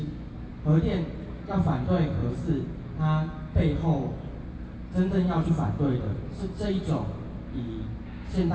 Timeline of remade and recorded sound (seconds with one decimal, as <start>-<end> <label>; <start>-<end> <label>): 0.0-8.5 recorded